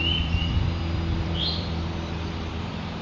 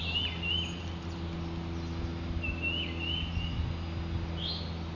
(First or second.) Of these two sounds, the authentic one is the second